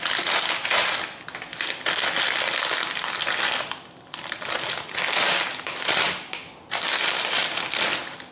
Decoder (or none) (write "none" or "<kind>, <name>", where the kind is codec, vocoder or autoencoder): none